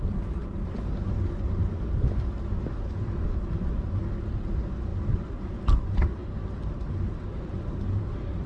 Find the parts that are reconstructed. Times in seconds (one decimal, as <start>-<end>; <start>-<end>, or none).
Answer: none